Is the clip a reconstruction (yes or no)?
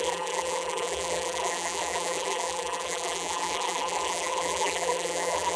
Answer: yes